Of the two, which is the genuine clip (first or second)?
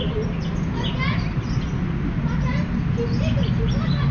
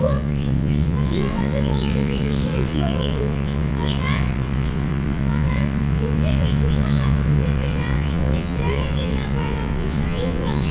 first